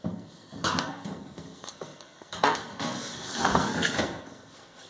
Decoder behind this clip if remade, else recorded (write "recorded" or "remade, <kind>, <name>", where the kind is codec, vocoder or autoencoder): remade, codec, SNAC